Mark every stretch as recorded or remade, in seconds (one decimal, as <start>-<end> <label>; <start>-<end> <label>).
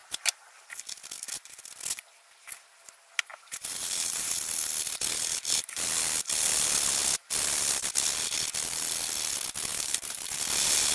0.0-0.6 remade; 0.6-3.3 recorded; 3.3-4.3 remade; 4.3-9.7 recorded; 9.7-10.4 remade; 10.4-10.9 recorded